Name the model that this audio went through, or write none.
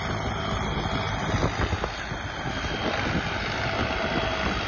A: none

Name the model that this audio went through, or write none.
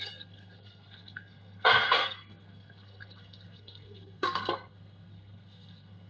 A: codec, SNAC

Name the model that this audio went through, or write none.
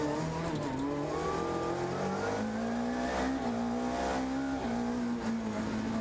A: none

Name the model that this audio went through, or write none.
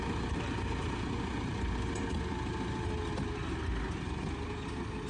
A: none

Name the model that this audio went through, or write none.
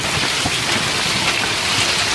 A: none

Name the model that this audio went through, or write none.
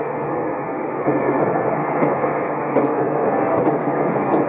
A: codec, SNAC